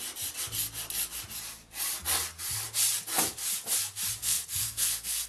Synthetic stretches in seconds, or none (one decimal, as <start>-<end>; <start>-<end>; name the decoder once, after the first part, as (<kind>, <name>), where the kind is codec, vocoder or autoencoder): 4.2-5.3 (codec, SNAC)